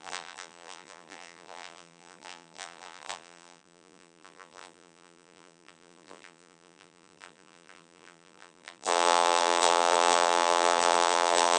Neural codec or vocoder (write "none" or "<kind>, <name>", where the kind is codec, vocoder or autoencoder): vocoder, BigVGAN v2